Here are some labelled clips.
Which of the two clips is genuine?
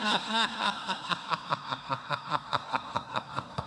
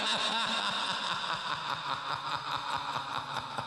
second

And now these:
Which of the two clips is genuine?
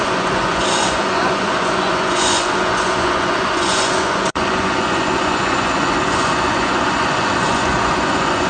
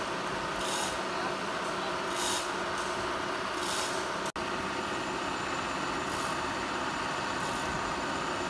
second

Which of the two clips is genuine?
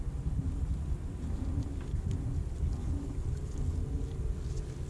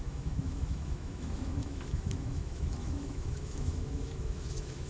first